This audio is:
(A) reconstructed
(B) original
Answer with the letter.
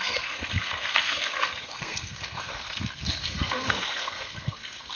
A